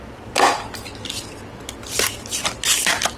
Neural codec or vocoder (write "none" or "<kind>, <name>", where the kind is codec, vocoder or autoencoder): none